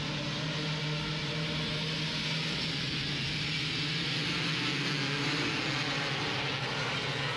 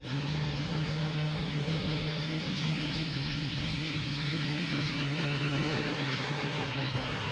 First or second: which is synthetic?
second